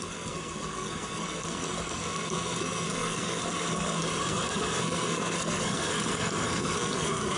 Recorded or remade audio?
remade